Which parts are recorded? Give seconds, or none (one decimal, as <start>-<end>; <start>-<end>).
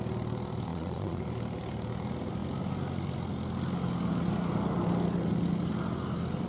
0.0-0.7; 1.2-6.5